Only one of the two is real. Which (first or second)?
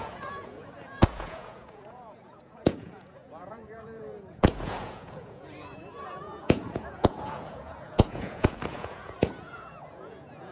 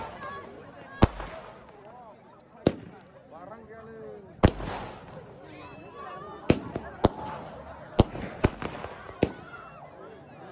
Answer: second